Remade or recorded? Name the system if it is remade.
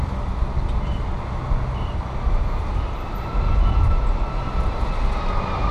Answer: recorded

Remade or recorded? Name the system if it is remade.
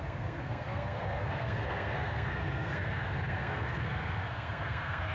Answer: remade, codec, SNAC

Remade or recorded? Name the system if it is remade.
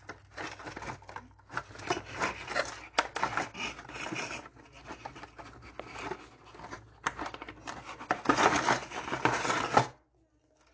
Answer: recorded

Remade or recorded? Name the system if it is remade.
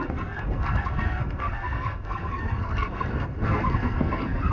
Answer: remade, codec, SNAC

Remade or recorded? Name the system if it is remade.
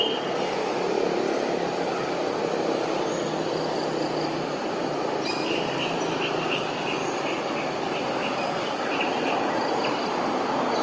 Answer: recorded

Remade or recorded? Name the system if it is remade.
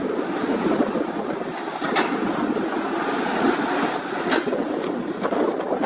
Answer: recorded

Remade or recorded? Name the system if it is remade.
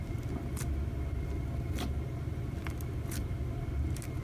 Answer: recorded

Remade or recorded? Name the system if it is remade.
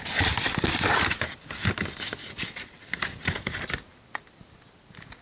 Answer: recorded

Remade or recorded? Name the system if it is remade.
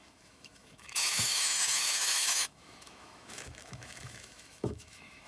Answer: remade, autoencoder, DAC-VAE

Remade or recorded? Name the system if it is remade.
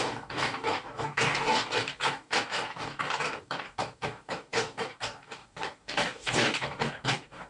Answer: remade, codec, DAC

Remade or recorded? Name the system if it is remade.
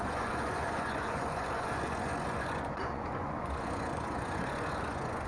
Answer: remade, vocoder, Vocos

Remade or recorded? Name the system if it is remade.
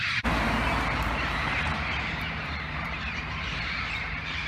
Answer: remade, vocoder, BigVGAN v2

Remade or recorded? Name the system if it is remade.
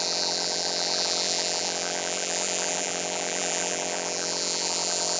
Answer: remade, vocoder, BigVGAN v2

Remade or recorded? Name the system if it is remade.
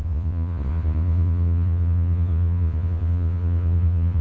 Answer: remade, vocoder, Vocos